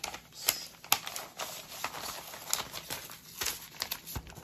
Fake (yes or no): no